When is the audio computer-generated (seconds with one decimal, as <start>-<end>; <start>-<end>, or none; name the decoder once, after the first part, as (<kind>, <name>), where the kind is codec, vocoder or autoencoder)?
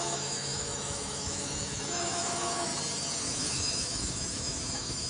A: 0.0-2.7 (autoencoder, DAC-VAE); 3.2-5.1